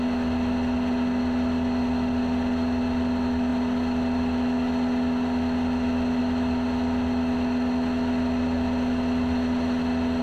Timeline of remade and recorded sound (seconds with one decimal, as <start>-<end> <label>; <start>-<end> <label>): 0.0-10.2 recorded